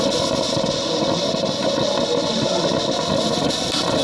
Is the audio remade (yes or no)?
no